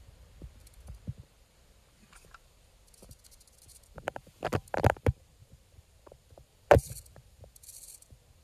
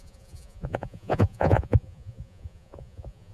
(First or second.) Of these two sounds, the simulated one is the second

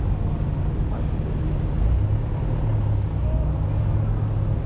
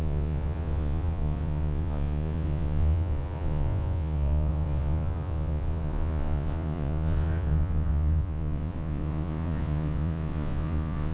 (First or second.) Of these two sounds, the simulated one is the second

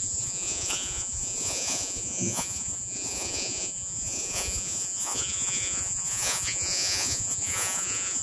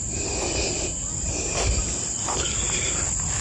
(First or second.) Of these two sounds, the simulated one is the first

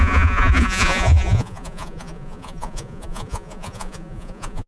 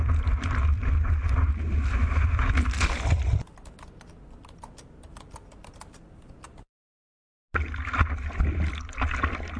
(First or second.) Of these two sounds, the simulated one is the first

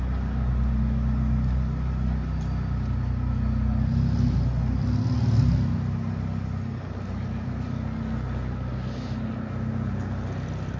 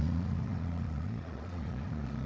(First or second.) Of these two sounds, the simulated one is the second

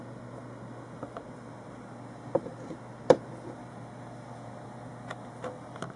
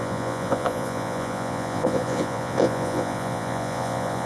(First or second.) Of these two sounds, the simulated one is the second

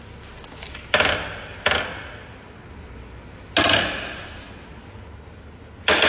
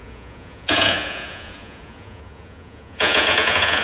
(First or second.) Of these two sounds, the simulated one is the second